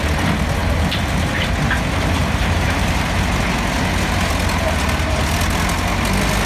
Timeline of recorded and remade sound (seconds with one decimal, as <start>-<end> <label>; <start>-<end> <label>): 0.0-0.6 recorded; 0.6-1.4 remade; 1.4-2.2 recorded; 2.2-3.3 remade; 3.3-6.5 recorded